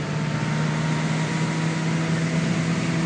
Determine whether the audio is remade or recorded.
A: recorded